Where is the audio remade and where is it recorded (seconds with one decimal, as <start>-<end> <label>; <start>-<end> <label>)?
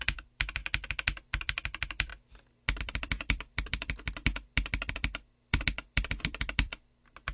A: 0.0-0.6 remade; 0.6-1.3 recorded; 1.3-2.1 remade; 2.1-2.8 recorded; 2.8-4.2 remade; 4.2-4.9 recorded; 4.9-7.3 remade